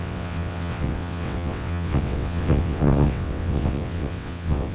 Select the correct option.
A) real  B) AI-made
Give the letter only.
B